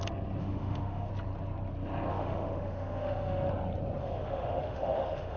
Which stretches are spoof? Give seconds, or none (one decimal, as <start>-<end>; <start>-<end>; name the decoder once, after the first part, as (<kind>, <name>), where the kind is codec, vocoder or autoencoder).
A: 0.4-1.1 (autoencoder, DAC-VAE); 2.1-3.5; 4.0-5.4

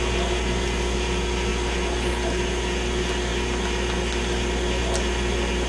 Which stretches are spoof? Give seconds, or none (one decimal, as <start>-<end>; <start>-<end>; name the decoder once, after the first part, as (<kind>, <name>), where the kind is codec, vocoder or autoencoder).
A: none

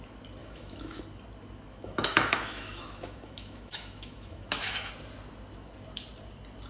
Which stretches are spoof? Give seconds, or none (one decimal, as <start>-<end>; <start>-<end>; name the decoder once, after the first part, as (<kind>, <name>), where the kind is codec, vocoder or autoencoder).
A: 0.4-1.0 (autoencoder, DAC-VAE); 1.7-4.9

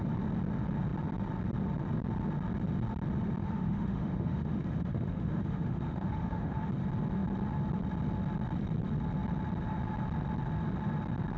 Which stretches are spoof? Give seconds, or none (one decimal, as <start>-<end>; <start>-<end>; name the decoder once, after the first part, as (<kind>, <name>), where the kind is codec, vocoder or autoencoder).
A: 3.4-6.7 (autoencoder, DAC-VAE)

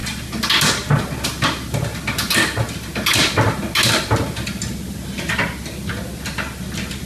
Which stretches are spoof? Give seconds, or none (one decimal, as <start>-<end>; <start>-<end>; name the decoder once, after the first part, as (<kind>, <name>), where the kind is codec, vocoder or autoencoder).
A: none

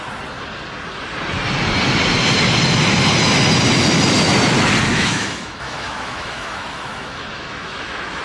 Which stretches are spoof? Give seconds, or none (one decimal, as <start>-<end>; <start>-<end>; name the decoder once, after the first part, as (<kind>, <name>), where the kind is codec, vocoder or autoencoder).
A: 4.9-8.2 (autoencoder, DAC-VAE)